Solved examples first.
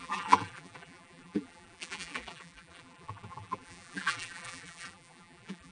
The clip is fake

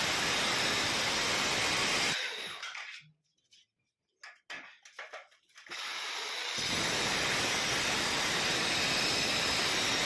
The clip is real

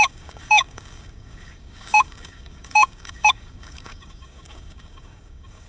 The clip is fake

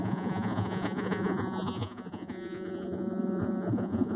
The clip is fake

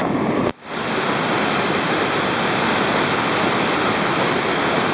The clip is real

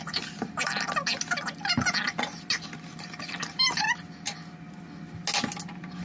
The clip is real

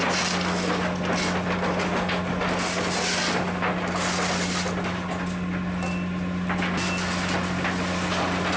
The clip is real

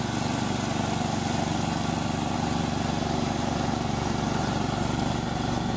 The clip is real